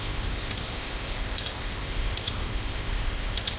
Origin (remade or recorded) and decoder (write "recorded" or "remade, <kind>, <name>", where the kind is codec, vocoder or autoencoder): remade, codec, ZipCodec